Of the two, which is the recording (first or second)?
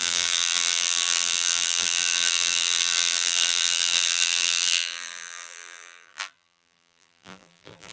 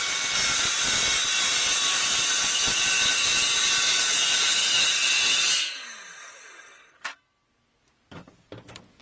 second